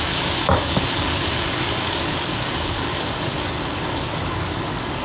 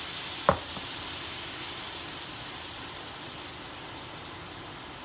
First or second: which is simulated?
first